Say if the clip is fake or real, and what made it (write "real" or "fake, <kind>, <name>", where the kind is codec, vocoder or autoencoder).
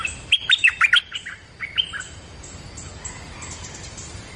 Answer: fake, vocoder, BigVGAN v2